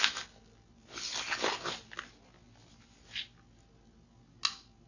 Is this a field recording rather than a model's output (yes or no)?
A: yes